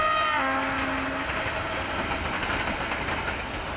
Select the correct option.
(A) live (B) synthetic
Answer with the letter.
A